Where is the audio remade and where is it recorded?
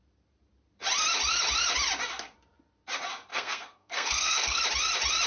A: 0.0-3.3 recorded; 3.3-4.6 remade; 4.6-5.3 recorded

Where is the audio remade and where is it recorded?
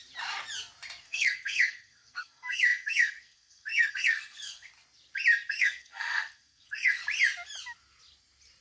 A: 0.0-1.0 recorded; 1.0-4.7 remade; 4.7-5.5 recorded; 5.5-7.0 remade; 7.0-8.6 recorded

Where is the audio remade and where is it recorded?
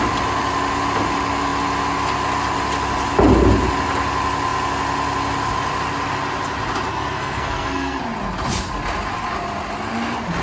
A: 0.0-6.9 recorded; 6.9-8.0 remade; 8.0-10.4 recorded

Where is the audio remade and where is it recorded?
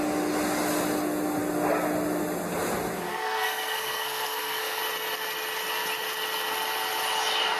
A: 0.0-3.1 recorded; 3.1-4.8 remade; 4.8-7.6 recorded